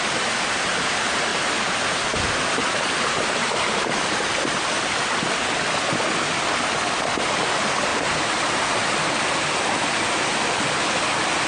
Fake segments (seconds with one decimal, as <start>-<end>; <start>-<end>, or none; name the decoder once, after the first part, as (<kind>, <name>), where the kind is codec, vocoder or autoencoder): 1.3-4.3 (vocoder, BigVGAN v2); 7.9-9.1